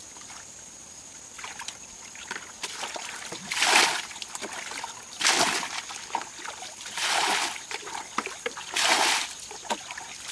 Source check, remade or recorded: recorded